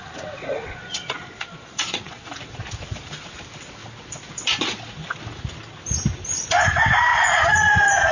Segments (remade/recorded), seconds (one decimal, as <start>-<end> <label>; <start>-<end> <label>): 0.0-0.4 recorded; 0.4-2.3 remade; 2.3-7.1 recorded; 7.1-8.1 remade